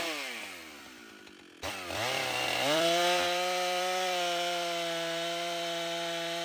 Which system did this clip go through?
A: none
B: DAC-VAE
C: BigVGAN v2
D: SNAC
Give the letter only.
C